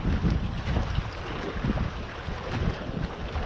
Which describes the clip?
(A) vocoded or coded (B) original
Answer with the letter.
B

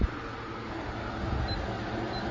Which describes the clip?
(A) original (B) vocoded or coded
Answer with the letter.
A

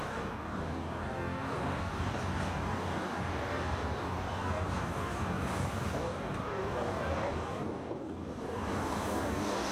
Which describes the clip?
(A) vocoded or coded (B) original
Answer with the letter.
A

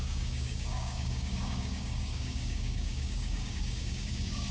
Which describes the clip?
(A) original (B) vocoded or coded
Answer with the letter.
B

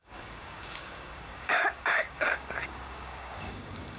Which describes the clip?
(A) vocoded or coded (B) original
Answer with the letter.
A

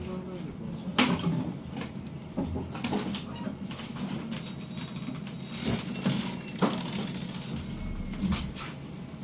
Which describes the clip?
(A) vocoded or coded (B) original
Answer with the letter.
B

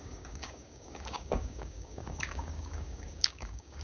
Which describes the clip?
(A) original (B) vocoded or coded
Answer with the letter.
B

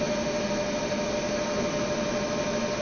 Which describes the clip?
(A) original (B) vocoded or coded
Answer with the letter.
A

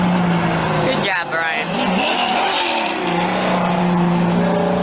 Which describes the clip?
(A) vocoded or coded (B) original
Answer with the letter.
B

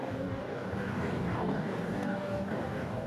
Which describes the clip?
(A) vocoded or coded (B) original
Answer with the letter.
A